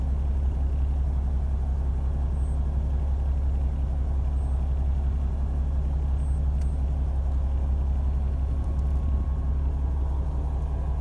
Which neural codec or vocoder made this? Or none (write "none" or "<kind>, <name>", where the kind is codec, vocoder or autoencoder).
none